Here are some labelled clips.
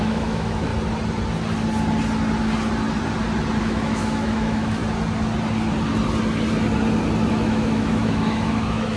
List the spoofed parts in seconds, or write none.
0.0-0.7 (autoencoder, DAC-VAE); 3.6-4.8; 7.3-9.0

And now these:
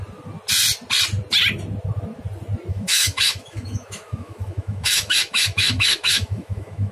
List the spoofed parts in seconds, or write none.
2.7-6.9 (autoencoder, DAC-VAE)

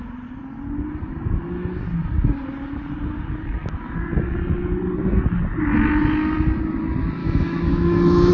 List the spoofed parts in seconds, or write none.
7.2-8.3 (autoencoder, DAC-VAE)

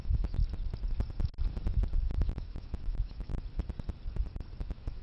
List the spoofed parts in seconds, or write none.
0.0-0.4 (autoencoder, DAC-VAE); 2.0-3.3; 4.6-5.0

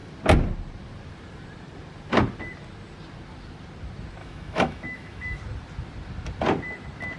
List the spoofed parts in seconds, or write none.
4.2-5.4 (autoencoder, DAC-VAE)

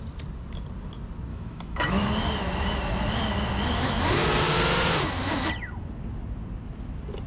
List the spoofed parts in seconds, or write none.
1.3-2.1 (autoencoder, DAC-VAE)

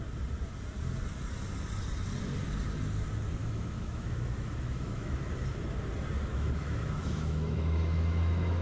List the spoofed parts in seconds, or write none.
3.4-5.3 (autoencoder, DAC-VAE); 6.3-8.6

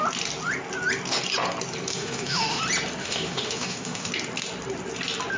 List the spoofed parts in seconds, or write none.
1.9-2.6 (autoencoder, DAC-VAE); 3.0-4.1